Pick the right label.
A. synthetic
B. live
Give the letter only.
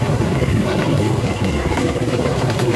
A